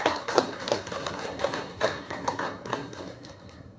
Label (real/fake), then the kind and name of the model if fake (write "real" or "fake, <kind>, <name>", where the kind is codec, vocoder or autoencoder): fake, codec, SNAC